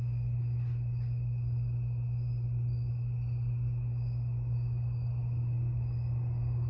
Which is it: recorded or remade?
recorded